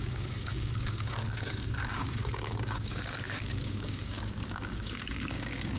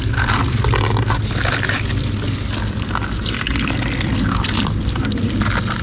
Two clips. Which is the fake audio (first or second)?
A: first